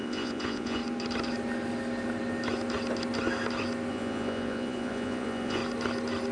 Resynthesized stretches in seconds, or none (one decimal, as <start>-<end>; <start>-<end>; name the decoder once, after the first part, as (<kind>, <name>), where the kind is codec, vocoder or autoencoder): 0.0-0.8 (vocoder, Vocos); 3.9-5.6